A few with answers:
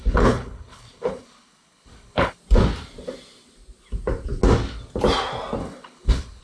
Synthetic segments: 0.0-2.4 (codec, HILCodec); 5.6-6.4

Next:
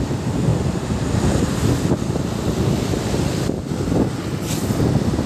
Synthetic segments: 0.5-2.2 (vocoder, BigVGAN v2)

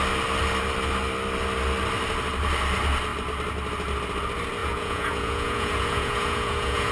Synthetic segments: 4.6-6.9 (vocoder, Vocos)